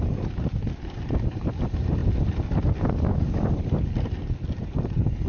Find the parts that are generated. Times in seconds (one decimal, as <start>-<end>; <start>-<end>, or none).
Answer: none